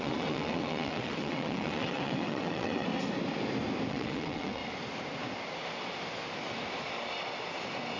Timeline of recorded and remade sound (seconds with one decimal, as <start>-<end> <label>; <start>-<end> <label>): 0.0-2.9 remade; 2.9-3.9 recorded; 3.9-4.6 remade; 4.6-8.0 recorded